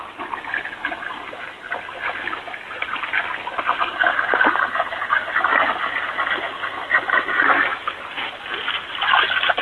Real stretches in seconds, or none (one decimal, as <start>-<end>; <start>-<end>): 0.0-9.6